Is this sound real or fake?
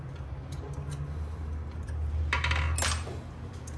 real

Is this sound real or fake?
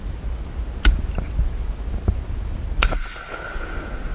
real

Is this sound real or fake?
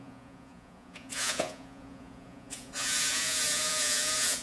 fake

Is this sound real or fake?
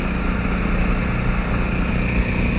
real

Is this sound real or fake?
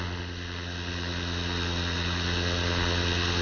real